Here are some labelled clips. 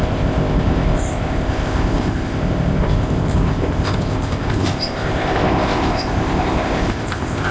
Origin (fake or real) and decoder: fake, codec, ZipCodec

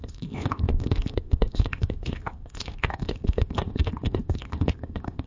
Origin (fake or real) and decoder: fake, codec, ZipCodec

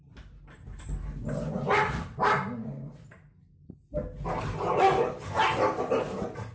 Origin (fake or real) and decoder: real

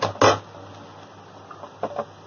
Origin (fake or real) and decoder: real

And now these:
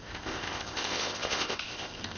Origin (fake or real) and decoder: fake, codec, ZipCodec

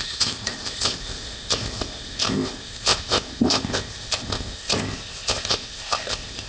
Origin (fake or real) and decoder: fake, codec, ZipCodec